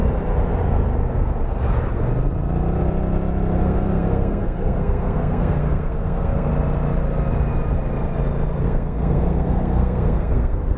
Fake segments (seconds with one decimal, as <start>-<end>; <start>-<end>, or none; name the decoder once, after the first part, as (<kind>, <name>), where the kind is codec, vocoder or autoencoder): 3.6-6.5 (codec, SNAC); 8.6-10.8